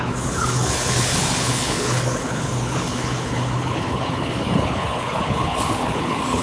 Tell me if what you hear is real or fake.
fake